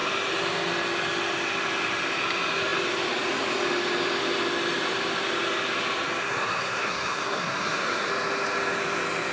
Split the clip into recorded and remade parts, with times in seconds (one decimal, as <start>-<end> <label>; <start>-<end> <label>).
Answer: 0.0-6.2 recorded; 6.2-8.1 remade; 8.1-9.3 recorded